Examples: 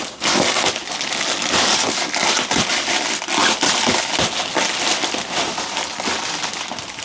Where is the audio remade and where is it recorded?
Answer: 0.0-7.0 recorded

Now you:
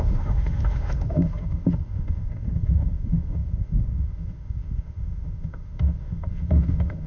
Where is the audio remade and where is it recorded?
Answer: 0.0-7.1 remade

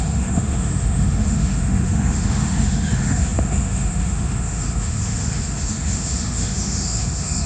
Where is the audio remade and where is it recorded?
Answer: 0.0-7.5 remade

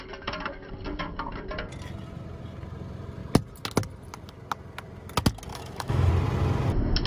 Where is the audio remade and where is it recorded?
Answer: 0.0-5.5 recorded; 5.5-6.1 remade; 6.1-7.1 recorded

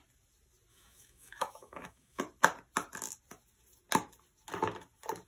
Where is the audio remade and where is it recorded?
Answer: 0.0-0.7 recorded; 0.7-2.2 remade; 2.2-5.3 recorded